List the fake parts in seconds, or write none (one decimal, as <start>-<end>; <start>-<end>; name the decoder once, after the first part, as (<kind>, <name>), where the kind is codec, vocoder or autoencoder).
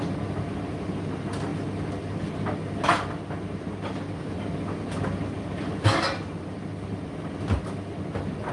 none